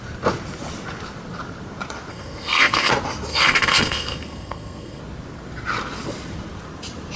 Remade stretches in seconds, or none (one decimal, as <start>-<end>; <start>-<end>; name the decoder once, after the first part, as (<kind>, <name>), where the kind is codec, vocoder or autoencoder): 2.1-2.9 (codec, SNAC); 3.3-5.0